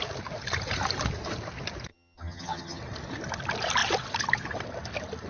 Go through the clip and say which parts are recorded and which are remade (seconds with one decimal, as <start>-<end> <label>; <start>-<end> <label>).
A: 0.0-1.9 recorded; 1.9-2.8 remade; 2.8-5.3 recorded